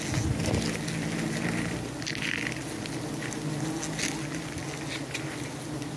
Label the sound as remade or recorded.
recorded